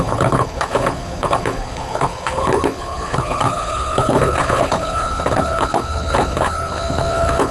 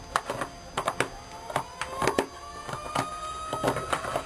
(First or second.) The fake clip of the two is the first